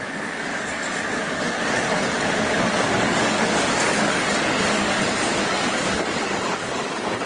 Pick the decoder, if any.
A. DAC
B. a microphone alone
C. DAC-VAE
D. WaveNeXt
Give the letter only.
A